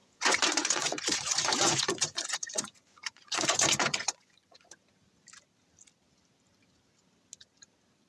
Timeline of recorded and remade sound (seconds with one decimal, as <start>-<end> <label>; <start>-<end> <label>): 0.0-4.8 remade; 4.8-8.1 recorded